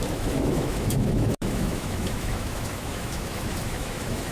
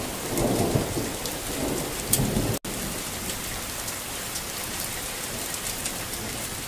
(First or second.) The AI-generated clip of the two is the first